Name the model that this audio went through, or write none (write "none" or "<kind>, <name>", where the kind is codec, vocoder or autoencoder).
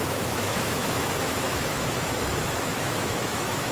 autoencoder, DAC-VAE